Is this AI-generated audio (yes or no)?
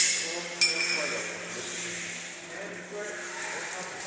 no